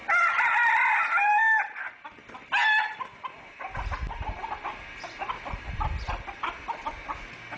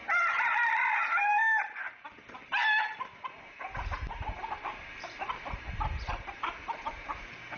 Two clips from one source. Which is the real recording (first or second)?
first